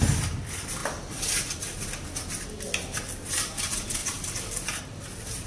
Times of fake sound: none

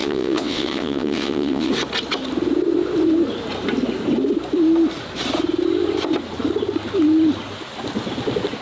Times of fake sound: 0.0-1.7 (vocoder, WaveNeXt)

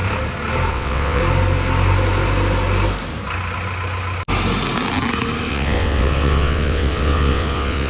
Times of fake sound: 0.7-1.2 (vocoder, WaveNeXt); 5.5-7.9

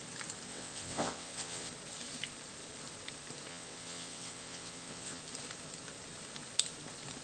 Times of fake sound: 0.5-1.7 (vocoder, WaveNeXt); 3.5-5.2